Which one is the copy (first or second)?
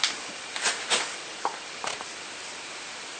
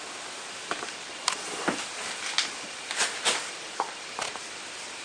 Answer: second